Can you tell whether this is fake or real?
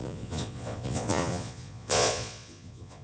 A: fake